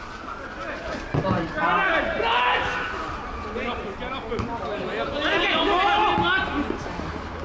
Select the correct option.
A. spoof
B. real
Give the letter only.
B